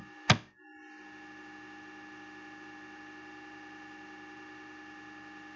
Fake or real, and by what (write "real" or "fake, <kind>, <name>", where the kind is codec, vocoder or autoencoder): real